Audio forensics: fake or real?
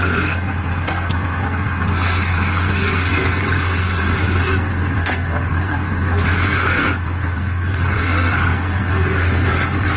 fake